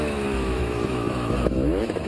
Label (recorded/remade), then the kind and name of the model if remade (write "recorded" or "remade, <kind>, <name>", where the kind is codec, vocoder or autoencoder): remade, autoencoder, DAC-VAE